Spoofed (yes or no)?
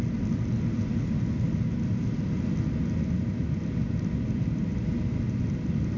no